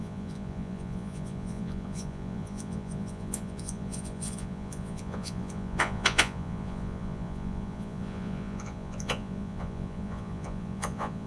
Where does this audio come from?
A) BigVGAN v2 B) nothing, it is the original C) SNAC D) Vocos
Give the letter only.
D